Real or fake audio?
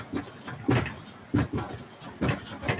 real